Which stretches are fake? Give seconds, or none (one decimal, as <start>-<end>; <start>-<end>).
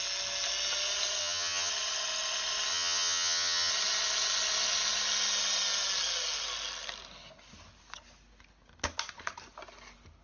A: 1.2-1.7; 2.7-3.7